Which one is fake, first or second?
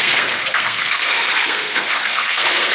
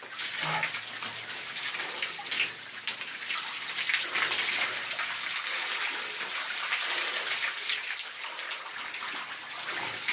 first